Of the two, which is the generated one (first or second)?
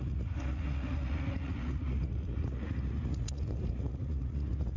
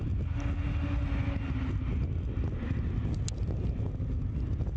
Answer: first